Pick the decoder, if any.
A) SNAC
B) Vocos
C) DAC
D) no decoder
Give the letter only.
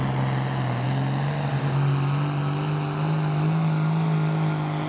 D